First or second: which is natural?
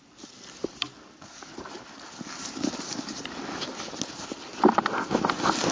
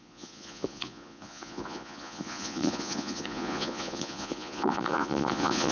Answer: first